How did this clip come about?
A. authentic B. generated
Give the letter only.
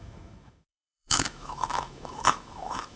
B